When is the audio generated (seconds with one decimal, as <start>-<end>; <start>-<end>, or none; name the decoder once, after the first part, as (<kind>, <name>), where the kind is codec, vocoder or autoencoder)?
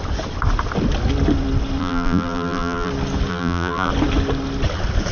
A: 1.8-2.9 (vocoder, BigVGAN v2); 3.3-3.9